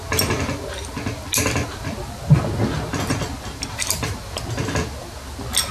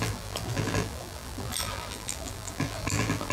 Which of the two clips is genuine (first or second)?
first